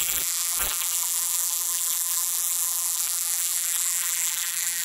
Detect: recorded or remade remade